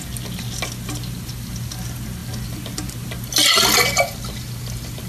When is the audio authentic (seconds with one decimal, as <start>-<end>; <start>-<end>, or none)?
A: 0.0-5.1